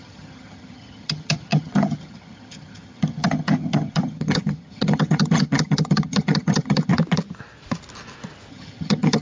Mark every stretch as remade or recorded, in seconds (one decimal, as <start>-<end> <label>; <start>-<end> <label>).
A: 0.0-6.9 remade; 6.9-8.5 recorded; 8.5-9.2 remade